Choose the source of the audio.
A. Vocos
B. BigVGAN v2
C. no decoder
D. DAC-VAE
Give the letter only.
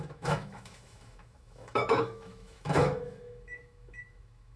D